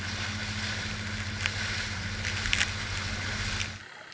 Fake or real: real